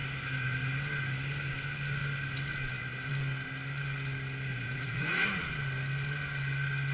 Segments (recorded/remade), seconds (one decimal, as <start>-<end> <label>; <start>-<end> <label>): 0.0-4.5 recorded; 4.5-5.3 remade; 5.3-6.9 recorded

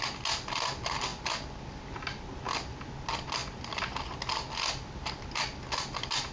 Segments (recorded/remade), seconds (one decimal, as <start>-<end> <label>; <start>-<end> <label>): 0.0-6.3 recorded

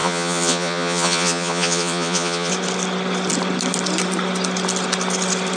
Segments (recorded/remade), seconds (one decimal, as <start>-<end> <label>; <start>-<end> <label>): 0.0-2.5 remade; 2.5-5.6 recorded

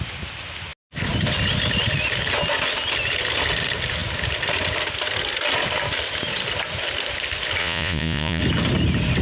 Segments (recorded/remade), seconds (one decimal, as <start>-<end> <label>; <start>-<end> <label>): 0.0-7.6 recorded; 7.6-8.4 remade; 8.4-9.2 recorded

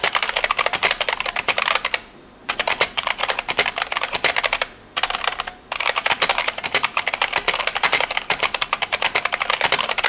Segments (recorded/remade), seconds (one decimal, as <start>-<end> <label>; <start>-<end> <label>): 0.0-2.4 recorded; 2.4-3.1 remade; 3.1-10.1 recorded

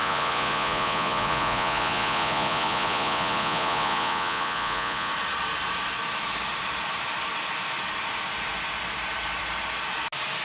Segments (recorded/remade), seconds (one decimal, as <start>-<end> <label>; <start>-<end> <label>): 0.0-5.1 remade; 5.1-10.4 recorded

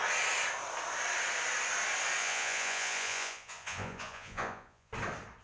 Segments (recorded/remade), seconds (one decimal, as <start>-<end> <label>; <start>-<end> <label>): 0.0-2.2 recorded; 2.2-4.9 remade; 4.9-5.4 recorded

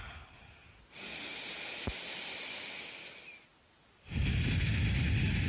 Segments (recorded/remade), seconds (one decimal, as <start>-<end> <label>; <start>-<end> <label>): 0.0-5.5 recorded